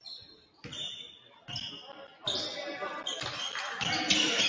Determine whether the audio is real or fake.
real